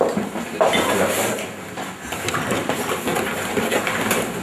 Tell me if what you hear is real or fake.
real